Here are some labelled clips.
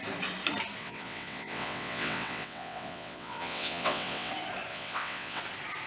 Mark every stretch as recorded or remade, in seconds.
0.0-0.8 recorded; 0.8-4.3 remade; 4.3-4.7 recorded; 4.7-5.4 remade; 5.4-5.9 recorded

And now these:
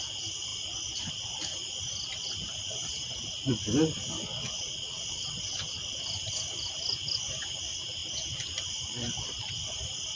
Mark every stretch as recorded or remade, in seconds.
0.0-4.3 recorded; 4.3-5.6 remade; 5.6-10.2 recorded

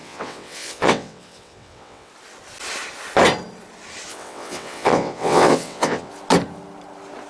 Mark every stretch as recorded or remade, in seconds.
0.0-2.1 remade; 2.1-4.1 recorded; 4.1-6.1 remade; 6.1-7.3 recorded